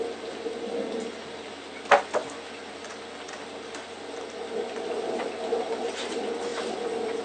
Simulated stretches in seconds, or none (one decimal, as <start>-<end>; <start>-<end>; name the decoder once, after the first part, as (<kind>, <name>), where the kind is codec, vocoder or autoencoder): none

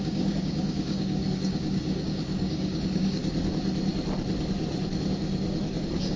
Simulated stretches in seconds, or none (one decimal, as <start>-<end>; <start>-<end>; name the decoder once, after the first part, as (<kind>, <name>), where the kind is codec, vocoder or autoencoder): 0.0-3.2 (codec, DAC); 5.8-6.2

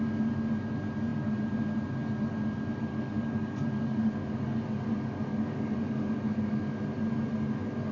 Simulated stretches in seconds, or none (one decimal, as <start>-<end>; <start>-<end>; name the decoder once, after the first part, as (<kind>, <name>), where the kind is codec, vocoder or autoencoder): 2.9-4.1 (codec, DAC); 5.3-6.8

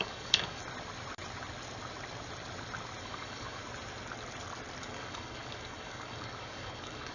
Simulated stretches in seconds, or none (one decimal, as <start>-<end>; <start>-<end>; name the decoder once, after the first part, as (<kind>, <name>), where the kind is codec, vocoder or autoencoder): 0.0-0.6 (codec, DAC); 3.0-3.6; 4.8-7.1

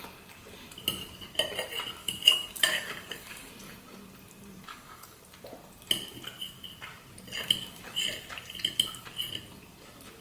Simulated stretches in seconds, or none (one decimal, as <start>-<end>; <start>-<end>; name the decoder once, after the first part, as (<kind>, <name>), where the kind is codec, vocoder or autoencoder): 2.0-3.5 (codec, DAC); 4.7-5.2

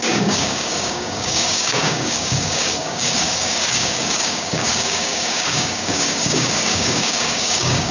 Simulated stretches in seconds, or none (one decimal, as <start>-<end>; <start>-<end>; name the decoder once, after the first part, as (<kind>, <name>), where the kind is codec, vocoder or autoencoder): 0.0-7.9 (codec, DAC)